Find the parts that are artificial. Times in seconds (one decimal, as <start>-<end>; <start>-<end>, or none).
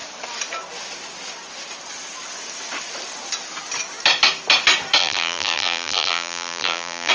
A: 5.0-7.1